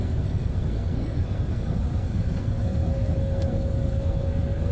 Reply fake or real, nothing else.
fake